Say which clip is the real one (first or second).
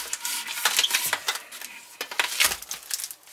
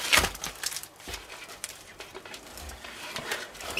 first